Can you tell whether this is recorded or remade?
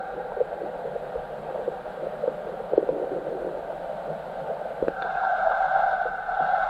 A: recorded